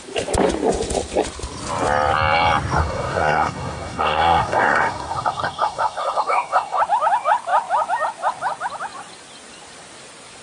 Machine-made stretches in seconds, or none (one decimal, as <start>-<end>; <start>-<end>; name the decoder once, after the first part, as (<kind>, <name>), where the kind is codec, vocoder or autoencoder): 2.8-6.8 (codec, SNAC)